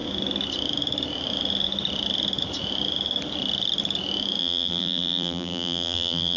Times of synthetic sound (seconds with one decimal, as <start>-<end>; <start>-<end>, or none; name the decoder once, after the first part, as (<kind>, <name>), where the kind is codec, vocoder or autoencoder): 4.4-6.4 (vocoder, BigVGAN v2)